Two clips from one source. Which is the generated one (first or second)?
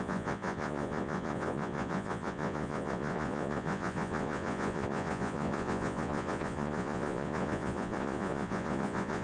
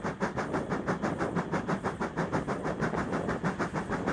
first